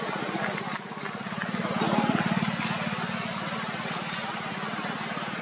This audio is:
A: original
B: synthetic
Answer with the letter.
A